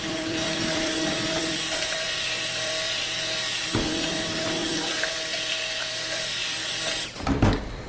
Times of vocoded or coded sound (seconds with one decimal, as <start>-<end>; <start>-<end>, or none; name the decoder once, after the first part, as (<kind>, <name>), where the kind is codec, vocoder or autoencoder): 0.0-7.9 (vocoder, BigVGAN v2)